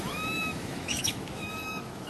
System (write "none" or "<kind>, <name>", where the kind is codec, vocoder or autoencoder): autoencoder, DAC-VAE